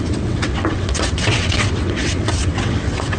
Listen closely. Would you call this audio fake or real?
fake